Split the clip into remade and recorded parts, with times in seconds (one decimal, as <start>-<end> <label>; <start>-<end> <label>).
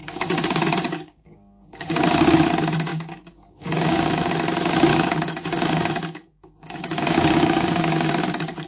0.0-2.0 remade; 2.0-2.9 recorded; 2.9-4.3 remade; 4.3-4.9 recorded; 4.9-8.1 remade; 8.1-8.7 recorded